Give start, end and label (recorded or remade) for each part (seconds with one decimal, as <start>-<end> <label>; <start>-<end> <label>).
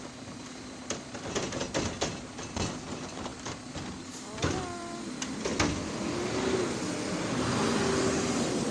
0.0-8.7 recorded